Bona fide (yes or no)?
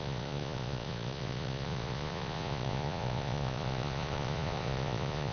no